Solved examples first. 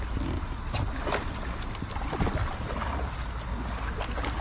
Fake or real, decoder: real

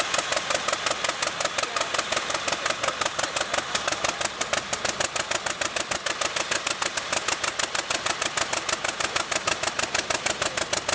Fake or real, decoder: real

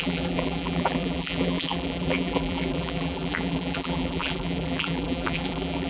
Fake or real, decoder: fake, vocoder, BigVGAN v2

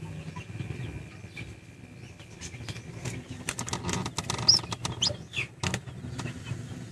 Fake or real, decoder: real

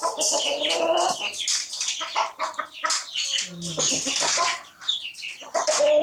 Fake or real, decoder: real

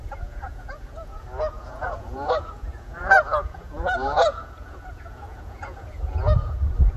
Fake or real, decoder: fake, vocoder, Vocos